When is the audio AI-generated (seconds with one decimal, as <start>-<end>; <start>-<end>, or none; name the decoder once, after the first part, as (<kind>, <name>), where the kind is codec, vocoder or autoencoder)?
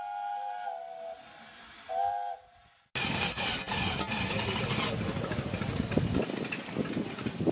none